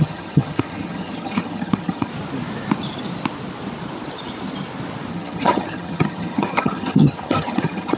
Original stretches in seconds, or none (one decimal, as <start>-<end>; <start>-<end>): 2.1-5.1